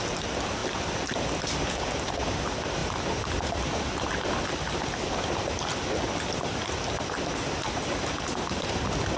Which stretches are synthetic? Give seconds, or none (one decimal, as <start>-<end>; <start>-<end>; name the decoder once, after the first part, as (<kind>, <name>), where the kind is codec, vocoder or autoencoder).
none